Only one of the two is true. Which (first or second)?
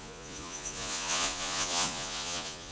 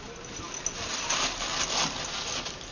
second